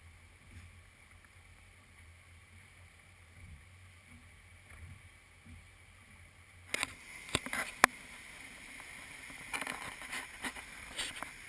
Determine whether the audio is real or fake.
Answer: real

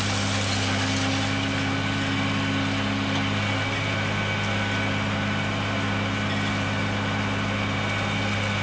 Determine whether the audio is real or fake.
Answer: real